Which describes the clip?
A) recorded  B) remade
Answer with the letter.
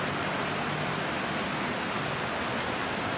A